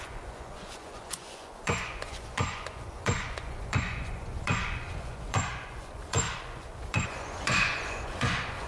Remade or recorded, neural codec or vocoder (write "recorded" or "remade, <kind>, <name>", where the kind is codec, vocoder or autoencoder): remade, vocoder, Vocos